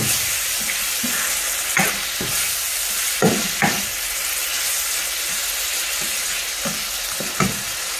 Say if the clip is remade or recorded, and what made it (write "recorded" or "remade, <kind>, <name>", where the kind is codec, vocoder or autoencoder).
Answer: recorded